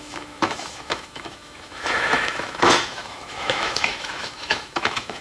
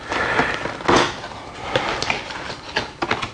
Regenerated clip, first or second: first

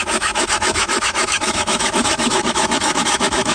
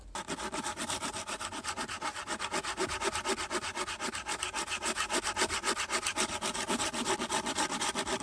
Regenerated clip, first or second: first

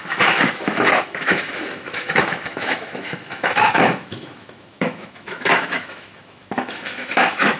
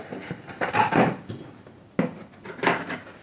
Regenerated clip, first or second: first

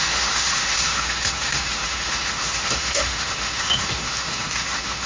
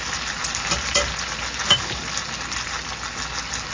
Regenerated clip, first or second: first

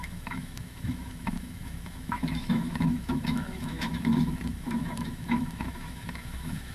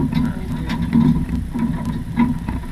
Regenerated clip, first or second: first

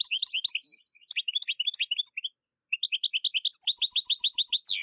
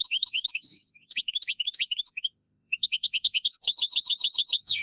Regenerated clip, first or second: second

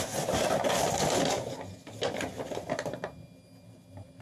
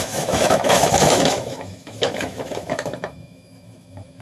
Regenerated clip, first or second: second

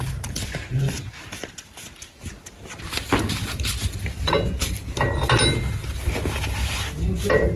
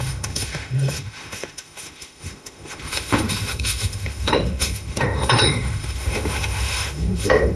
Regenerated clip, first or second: second